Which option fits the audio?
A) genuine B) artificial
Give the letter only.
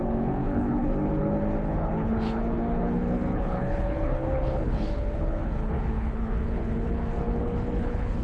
B